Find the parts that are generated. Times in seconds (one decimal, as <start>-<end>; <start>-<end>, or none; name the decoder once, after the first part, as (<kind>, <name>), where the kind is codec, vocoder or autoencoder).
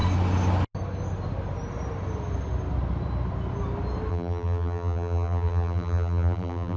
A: 4.1-6.8 (vocoder, BigVGAN v2)